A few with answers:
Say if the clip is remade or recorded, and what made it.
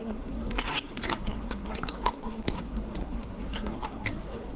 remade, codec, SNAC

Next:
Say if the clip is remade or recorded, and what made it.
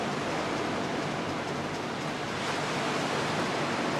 recorded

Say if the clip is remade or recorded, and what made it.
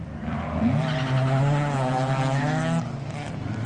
recorded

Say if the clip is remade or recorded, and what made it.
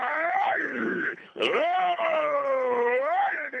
remade, codec, HILCodec